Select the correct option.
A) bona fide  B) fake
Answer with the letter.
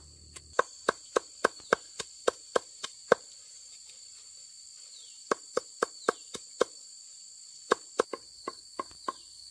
A